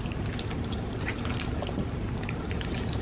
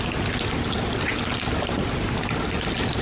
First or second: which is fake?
first